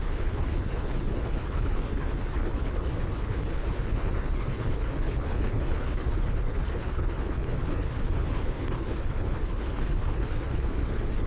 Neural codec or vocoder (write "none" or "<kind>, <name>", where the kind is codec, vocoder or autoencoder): codec, HILCodec